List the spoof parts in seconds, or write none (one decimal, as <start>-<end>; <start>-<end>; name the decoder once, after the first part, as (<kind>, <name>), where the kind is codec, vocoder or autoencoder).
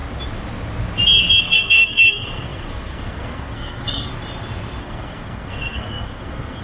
1.4-4.1 (codec, SNAC); 4.8-6.6